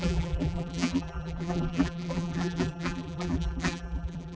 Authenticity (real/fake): fake